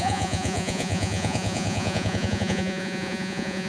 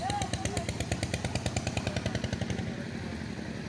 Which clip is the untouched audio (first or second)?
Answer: second